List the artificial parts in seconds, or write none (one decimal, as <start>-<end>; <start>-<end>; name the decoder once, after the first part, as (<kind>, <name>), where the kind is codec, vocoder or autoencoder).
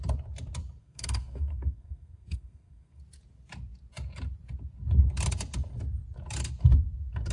0.8-3.0 (codec, SNAC)